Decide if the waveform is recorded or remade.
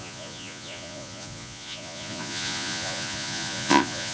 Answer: remade